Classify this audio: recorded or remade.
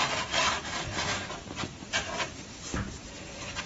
recorded